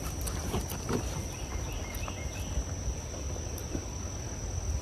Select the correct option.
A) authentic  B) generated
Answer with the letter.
A